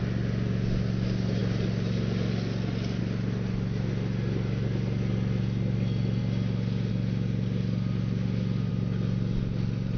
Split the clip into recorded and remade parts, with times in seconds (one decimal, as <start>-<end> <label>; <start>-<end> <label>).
0.0-10.0 recorded